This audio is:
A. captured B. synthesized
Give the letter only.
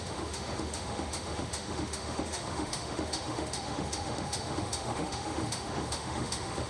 B